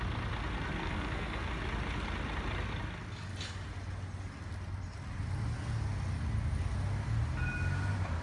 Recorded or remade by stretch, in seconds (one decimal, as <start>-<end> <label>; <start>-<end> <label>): 0.0-0.8 recorded; 0.8-1.5 remade; 1.5-8.2 recorded